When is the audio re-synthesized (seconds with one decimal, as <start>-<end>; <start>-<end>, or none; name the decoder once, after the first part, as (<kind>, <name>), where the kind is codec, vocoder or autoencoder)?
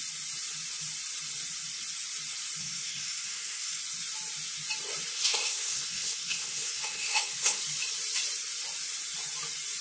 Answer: 2.6-3.8 (codec, SNAC); 5.1-7.6